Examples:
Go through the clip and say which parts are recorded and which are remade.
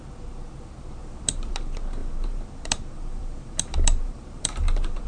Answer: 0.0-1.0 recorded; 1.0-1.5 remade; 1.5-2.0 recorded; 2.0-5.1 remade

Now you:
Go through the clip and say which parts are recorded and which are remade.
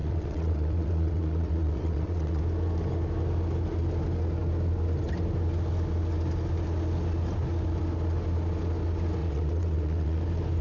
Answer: 0.0-2.4 remade; 2.4-9.2 recorded; 9.2-10.2 remade; 10.2-10.6 recorded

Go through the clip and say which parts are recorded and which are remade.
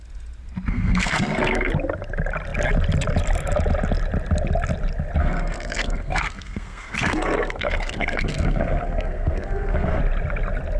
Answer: 0.0-0.7 recorded; 0.7-1.7 remade; 1.7-5.2 recorded; 5.2-10.0 remade; 10.0-10.8 recorded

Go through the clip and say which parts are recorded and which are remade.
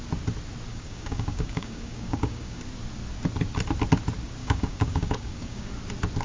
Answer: 0.0-0.7 recorded; 0.7-2.6 remade; 2.6-4.4 recorded; 4.4-5.7 remade; 5.7-6.2 recorded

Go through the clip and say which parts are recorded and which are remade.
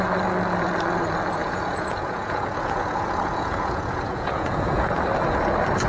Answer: 0.0-1.4 recorded; 1.4-4.9 remade; 4.9-5.9 recorded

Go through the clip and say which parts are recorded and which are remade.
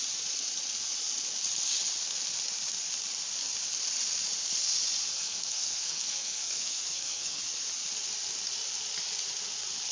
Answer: 0.0-5.1 recorded; 5.1-7.4 remade; 7.4-9.9 recorded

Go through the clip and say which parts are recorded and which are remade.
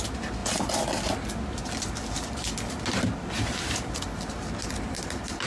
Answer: 0.0-5.5 recorded